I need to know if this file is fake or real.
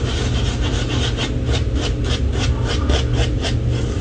real